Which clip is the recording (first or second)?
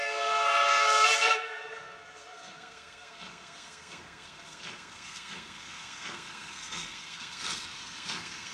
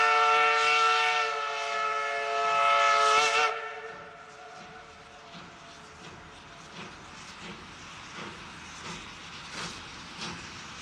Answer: second